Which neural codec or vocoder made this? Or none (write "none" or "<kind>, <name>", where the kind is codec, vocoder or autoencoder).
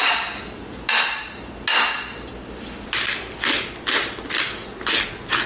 none